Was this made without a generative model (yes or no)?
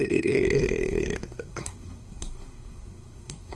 no